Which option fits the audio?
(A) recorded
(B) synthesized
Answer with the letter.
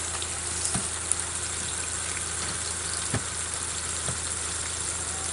A